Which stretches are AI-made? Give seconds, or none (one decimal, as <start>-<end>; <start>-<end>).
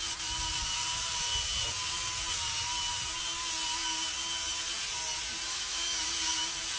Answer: 5.5-6.0